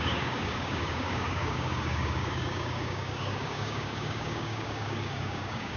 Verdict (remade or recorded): remade